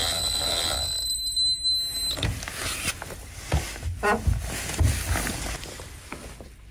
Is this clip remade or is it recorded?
recorded